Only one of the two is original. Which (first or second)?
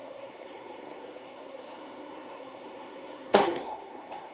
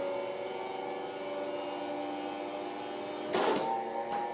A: second